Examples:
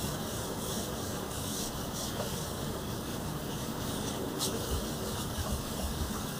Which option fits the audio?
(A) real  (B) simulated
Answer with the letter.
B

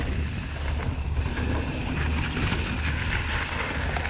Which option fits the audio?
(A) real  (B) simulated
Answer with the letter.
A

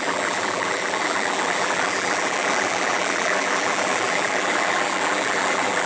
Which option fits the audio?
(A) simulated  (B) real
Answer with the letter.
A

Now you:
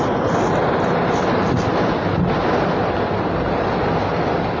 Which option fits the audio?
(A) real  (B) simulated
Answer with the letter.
A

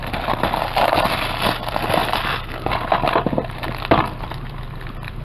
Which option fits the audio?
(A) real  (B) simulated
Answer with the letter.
A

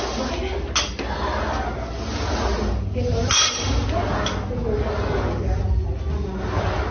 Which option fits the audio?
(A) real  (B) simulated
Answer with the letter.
A